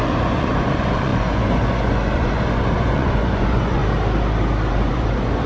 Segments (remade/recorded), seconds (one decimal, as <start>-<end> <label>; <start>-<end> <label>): 0.0-3.8 remade; 3.8-4.7 recorded; 4.7-5.5 remade